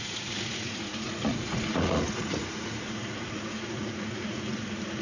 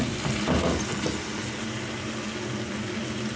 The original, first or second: second